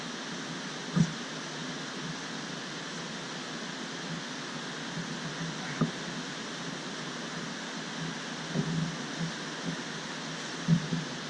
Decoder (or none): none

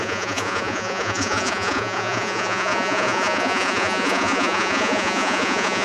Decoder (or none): vocoder, Vocos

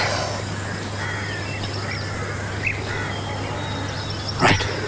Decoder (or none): none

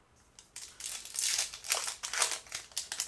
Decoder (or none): none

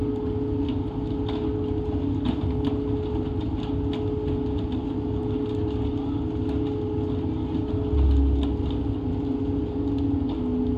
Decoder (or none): none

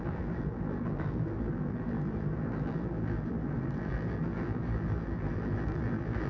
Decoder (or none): vocoder, BigVGAN v2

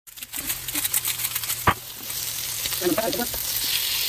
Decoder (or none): none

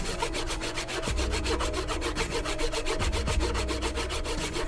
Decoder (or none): vocoder, Vocos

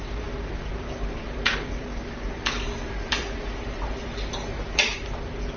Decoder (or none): vocoder, BigVGAN v2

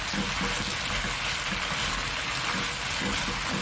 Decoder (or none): none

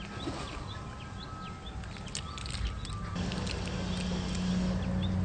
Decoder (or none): none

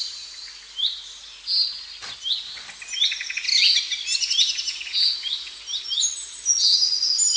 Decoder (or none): none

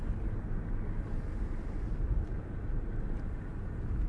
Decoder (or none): none